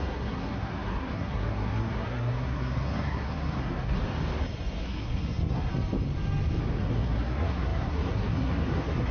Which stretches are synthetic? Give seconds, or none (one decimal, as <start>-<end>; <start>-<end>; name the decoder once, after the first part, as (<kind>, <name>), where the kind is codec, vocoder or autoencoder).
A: 0.0-4.0 (codec, SNAC); 4.8-5.7; 6.8-9.1